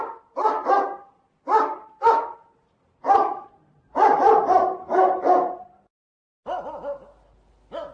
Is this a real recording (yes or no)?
yes